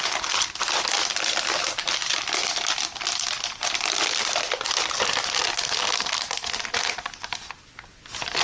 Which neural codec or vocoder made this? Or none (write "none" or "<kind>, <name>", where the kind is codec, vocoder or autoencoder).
vocoder, BigVGAN v2